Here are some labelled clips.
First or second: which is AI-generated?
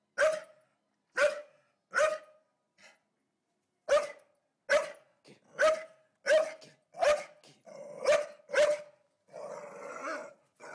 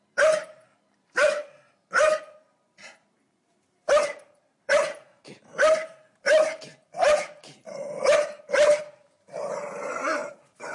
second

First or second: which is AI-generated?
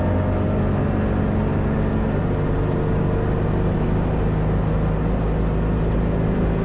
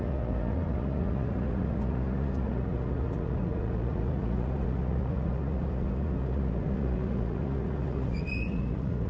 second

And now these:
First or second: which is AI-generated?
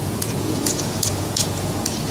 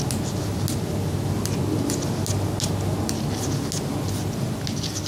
first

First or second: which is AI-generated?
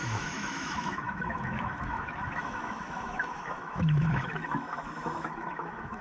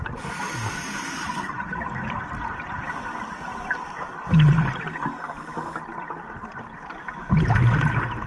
first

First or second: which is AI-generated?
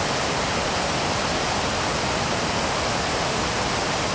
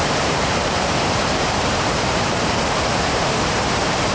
second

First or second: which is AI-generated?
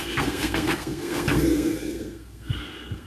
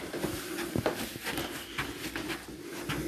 first